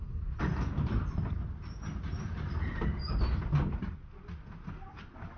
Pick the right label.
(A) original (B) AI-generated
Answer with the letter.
A